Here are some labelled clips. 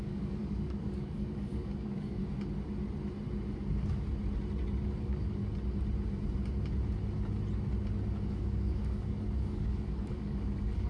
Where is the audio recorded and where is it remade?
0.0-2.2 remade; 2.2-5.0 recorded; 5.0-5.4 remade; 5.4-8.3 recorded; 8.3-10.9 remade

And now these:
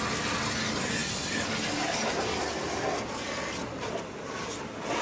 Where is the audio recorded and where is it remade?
0.0-5.0 recorded

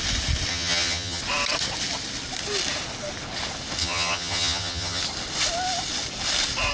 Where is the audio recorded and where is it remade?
0.0-0.5 recorded; 0.5-1.2 remade; 1.2-3.8 recorded; 3.8-5.0 remade; 5.0-6.7 recorded

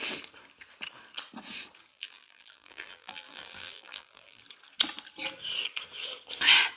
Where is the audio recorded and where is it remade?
0.0-1.9 recorded; 1.9-4.4 remade; 4.4-6.8 recorded

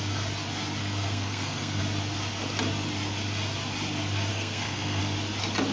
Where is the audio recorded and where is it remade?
0.0-0.8 recorded; 0.8-1.8 remade; 1.8-4.3 recorded; 4.3-5.0 remade; 5.0-5.7 recorded

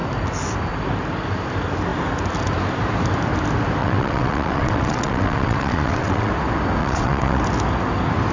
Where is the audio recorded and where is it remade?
0.0-3.8 recorded; 3.8-6.3 remade; 6.3-6.8 recorded; 6.8-7.4 remade; 7.4-8.3 recorded